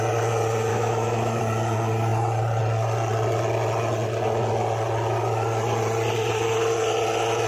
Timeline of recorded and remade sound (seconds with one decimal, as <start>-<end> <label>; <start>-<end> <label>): 0.0-0.7 recorded; 0.7-1.4 remade; 1.4-7.5 recorded